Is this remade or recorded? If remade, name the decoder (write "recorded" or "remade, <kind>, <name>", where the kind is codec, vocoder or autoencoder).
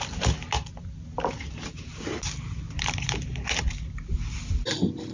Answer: recorded